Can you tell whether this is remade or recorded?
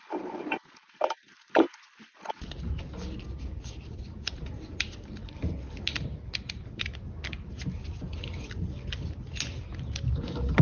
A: recorded